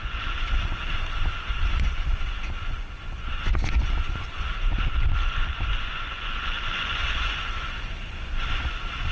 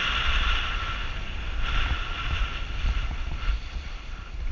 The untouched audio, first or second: second